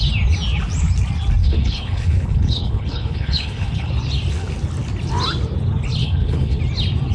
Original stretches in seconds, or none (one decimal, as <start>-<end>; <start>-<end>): 0.0-1.4; 3.9-6.0; 6.6-7.1